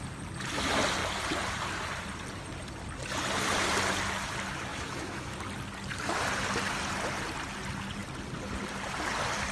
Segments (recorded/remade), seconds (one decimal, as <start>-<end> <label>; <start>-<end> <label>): 0.0-4.7 recorded; 4.7-5.4 remade; 5.4-9.5 recorded